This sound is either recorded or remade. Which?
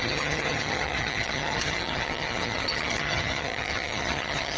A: remade